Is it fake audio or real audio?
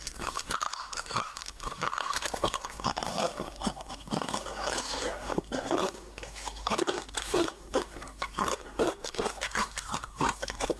fake